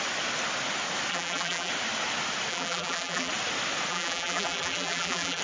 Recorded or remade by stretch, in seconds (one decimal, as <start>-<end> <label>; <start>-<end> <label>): 0.0-1.1 recorded; 1.1-1.7 remade; 1.7-2.5 recorded; 2.5-3.3 remade; 3.3-3.9 recorded; 3.9-5.4 remade